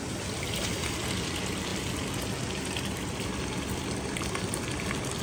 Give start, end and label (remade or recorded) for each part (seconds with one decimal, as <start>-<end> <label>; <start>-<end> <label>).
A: 0.0-5.2 recorded